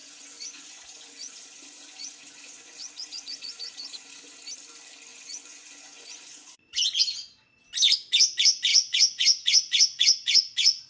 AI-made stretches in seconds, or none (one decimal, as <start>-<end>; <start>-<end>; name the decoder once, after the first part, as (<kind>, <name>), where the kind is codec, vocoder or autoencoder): 0.0-4.4 (vocoder, Vocos); 5.1-7.5; 8.7-10.9